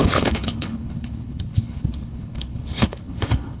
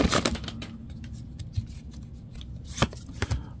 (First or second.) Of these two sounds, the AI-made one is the first